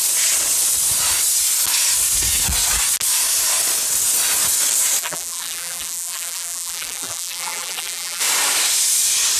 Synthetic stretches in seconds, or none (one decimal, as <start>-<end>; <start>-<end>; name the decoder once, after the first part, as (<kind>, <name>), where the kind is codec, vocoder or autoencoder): 5.0-8.2 (vocoder, BigVGAN v2)